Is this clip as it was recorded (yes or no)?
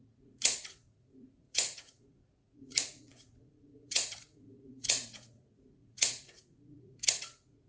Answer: no